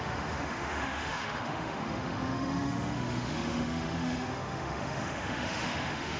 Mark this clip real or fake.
fake